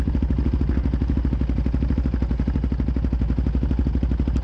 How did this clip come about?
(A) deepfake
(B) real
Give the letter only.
B